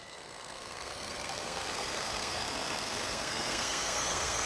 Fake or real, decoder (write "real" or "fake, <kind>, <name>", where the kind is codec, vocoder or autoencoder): fake, codec, SNAC